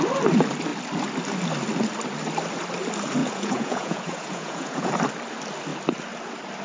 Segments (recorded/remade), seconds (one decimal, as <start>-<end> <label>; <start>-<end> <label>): 0.0-3.2 recorded; 3.2-4.9 remade; 4.9-6.6 recorded